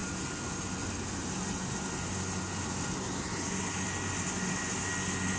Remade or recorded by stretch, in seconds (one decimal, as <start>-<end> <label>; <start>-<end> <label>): 0.0-5.4 recorded